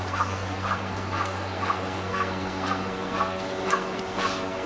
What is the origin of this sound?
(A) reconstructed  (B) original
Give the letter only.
A